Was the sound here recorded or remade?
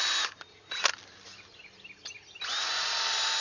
recorded